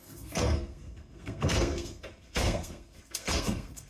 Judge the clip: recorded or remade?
remade